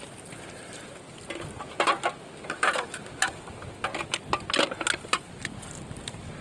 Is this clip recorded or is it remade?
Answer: recorded